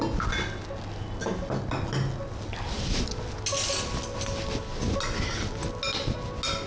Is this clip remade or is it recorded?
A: recorded